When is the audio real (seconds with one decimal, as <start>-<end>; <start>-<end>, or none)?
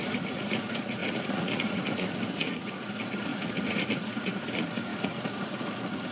none